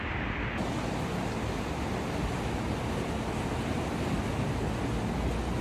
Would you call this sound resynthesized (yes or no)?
no